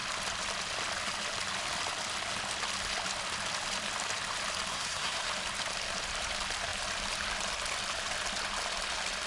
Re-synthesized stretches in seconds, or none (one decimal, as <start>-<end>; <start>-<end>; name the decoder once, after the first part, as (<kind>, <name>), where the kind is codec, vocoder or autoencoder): 4.7-5.2 (codec, SNAC)